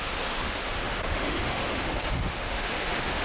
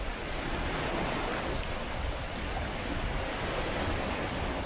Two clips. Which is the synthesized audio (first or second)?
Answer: first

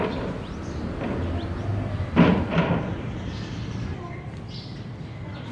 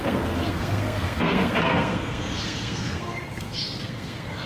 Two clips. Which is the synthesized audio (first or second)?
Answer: second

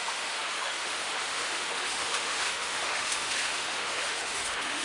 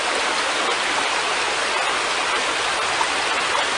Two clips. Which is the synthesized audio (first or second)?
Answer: first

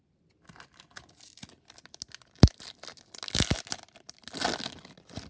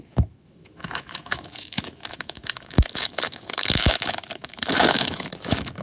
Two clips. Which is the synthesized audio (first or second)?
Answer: second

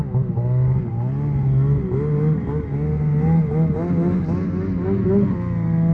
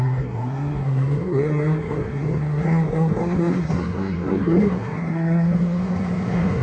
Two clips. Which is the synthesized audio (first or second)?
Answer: second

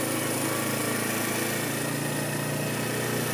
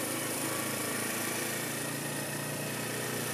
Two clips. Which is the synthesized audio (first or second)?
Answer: second